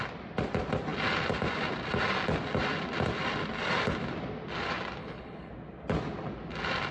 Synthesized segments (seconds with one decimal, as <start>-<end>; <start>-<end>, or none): 5.0-5.5